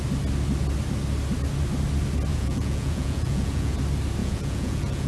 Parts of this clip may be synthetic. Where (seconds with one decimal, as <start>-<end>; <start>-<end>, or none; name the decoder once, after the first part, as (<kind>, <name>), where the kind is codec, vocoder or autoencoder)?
2.3-3.8 (vocoder, Vocos); 4.2-5.1